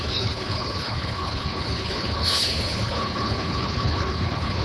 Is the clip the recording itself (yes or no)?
no